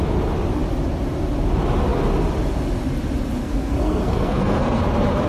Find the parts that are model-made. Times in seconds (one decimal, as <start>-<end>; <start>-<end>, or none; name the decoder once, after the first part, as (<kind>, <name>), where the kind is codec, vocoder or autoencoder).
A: 3.4-4.8 (codec, SNAC)